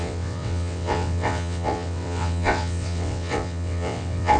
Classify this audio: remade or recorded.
remade